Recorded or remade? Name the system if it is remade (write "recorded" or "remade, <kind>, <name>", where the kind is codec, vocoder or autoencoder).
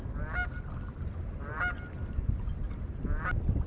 recorded